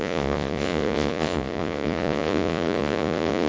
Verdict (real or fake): fake